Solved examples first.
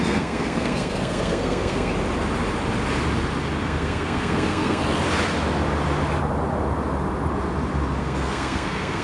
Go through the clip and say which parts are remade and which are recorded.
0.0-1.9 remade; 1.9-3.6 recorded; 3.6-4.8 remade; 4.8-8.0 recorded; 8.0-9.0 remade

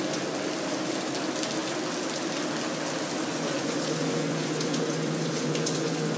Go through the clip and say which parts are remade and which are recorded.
0.0-3.3 recorded; 3.3-6.2 remade

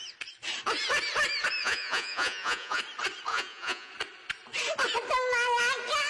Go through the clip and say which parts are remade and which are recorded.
0.0-1.6 recorded; 1.6-2.8 remade; 2.8-3.3 recorded; 3.3-3.9 remade; 3.9-6.1 recorded

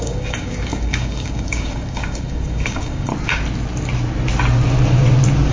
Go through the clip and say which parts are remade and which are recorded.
0.0-3.1 remade; 3.1-5.5 recorded

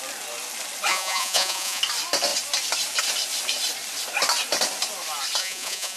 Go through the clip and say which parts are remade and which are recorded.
0.0-0.9 recorded; 0.9-1.8 remade; 1.8-5.4 recorded; 5.4-6.0 remade

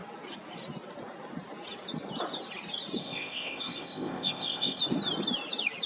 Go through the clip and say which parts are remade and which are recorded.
0.0-3.0 recorded; 3.0-4.8 remade; 4.8-5.9 recorded

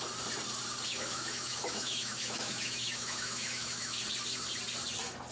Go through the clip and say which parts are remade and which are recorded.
0.0-0.9 recorded; 0.9-4.0 remade; 4.0-5.3 recorded